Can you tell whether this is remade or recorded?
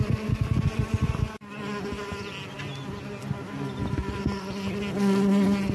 recorded